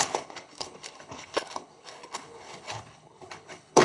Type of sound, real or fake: fake